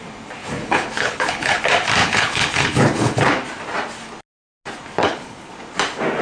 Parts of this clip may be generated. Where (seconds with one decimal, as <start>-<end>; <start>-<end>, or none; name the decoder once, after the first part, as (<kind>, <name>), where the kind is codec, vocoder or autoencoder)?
0.4-1.6 (codec, HILCodec); 2.0-3.3; 5.0-5.5